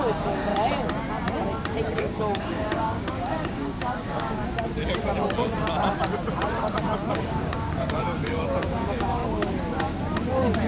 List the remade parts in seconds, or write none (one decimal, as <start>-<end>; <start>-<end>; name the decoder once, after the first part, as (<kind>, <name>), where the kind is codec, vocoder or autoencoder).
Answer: 0.0-0.5 (codec, DAC); 1.9-4.4; 7.1-9.2